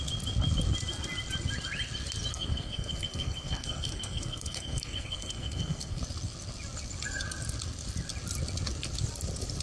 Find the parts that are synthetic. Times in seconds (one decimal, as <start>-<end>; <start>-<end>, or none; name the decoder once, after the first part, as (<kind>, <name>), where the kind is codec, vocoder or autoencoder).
2.3-6.0 (codec, SNAC)